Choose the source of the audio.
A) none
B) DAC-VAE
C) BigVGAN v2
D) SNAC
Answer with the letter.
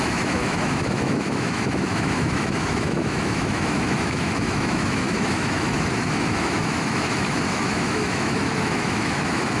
B